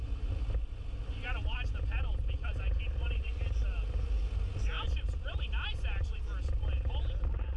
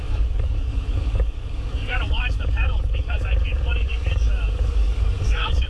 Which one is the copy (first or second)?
second